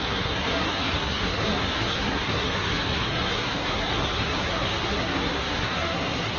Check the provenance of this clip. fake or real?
fake